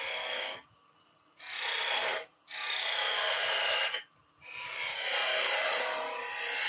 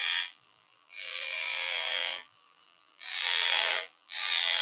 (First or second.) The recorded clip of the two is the first